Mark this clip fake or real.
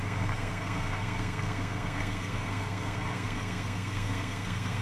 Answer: fake